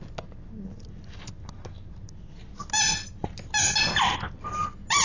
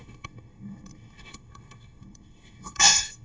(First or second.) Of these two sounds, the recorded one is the first